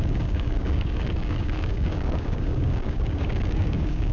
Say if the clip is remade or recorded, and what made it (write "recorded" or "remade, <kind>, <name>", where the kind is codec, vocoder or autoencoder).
remade, codec, DAC